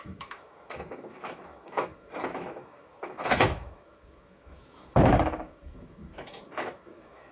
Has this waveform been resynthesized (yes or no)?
yes